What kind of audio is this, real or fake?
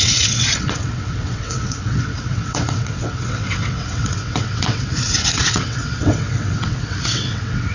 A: fake